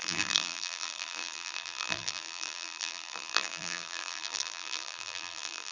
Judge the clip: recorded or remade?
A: remade